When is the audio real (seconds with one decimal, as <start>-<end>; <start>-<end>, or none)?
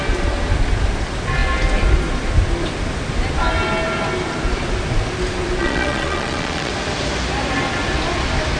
0.0-5.6; 6.7-8.6